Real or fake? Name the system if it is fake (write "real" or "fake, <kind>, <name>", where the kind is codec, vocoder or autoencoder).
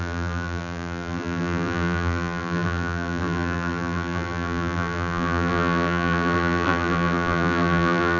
fake, vocoder, BigVGAN v2